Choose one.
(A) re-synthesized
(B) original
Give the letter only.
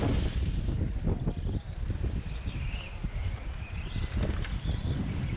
B